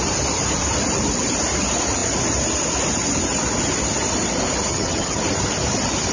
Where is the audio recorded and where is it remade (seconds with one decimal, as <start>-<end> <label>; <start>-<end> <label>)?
0.0-4.7 recorded; 4.7-5.2 remade; 5.2-6.1 recorded